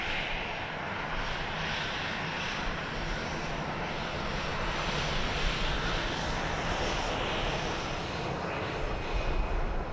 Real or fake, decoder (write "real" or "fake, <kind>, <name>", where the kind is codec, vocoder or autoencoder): real